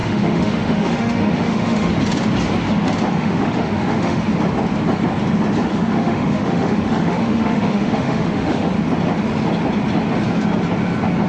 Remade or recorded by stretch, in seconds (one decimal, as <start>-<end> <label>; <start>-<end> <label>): 0.0-1.9 remade; 1.9-3.1 recorded; 3.1-4.2 remade; 4.2-5.7 recorded; 5.7-8.7 remade; 8.7-11.3 recorded